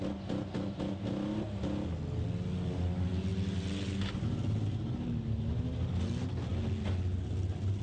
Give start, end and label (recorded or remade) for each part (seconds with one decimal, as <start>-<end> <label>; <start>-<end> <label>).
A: 0.0-7.8 recorded